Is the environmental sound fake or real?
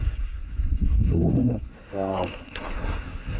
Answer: fake